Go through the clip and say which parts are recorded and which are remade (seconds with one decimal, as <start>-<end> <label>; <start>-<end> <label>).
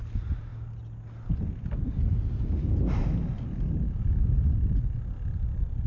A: 0.0-5.9 recorded